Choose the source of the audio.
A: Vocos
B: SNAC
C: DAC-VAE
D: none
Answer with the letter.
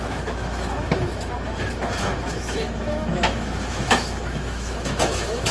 C